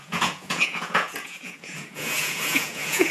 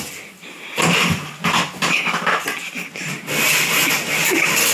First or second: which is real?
second